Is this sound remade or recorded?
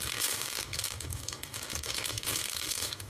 remade